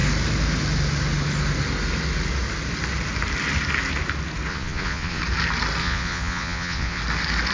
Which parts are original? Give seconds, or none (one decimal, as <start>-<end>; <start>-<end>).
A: 0.0-4.5; 5.2-5.8; 7.0-7.5